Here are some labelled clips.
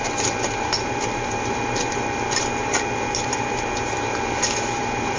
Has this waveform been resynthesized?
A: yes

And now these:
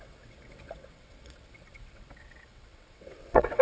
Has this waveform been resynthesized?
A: yes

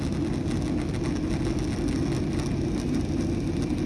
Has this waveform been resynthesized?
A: no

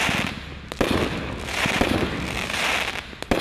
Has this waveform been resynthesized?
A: no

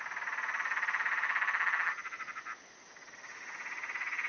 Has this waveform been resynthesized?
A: no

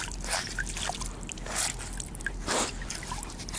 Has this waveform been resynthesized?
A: no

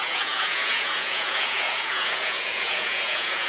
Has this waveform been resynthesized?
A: yes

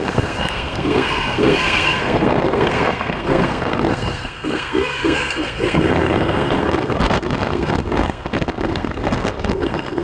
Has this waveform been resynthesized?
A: yes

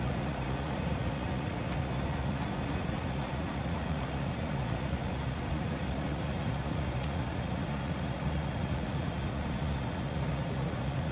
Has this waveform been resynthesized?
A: yes